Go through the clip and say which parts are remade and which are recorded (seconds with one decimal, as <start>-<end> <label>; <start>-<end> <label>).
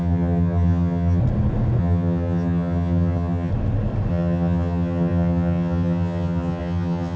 0.0-1.2 remade; 1.2-1.8 recorded; 1.8-3.5 remade; 3.5-4.1 recorded; 4.1-7.2 remade